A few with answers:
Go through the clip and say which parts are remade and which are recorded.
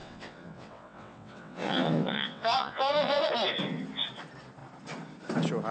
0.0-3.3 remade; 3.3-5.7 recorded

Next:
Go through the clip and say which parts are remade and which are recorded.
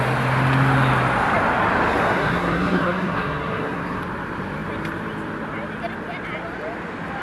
0.0-2.0 recorded; 2.0-4.0 remade; 4.0-7.2 recorded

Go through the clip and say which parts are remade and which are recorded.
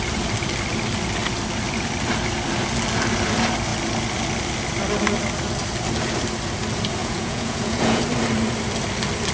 0.0-7.0 recorded; 7.0-8.0 remade; 8.0-9.3 recorded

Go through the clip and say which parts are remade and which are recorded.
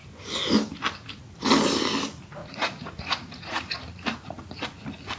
0.0-2.4 recorded; 2.4-4.6 remade; 4.6-5.2 recorded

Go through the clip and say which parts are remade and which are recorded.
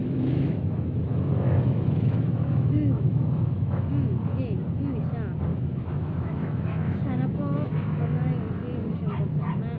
0.0-3.9 remade; 3.9-5.5 recorded; 5.5-8.0 remade; 8.0-9.8 recorded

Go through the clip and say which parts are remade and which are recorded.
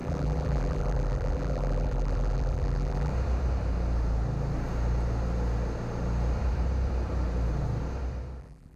0.0-3.1 remade; 3.1-8.4 recorded; 8.4-8.8 remade